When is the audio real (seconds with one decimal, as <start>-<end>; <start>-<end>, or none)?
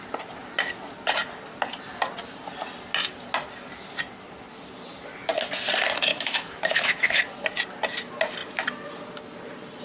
0.0-6.1; 7.2-9.8